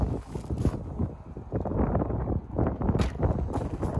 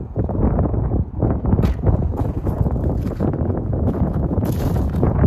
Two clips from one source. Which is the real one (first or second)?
first